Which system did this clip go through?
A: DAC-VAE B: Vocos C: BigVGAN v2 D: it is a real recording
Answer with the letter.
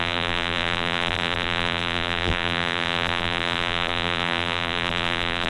C